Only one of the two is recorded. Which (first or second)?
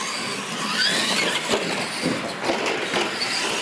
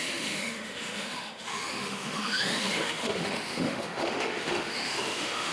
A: first